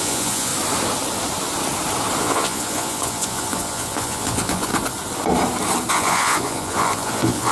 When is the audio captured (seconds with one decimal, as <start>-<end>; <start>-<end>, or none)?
0.5-2.2; 4.7-5.9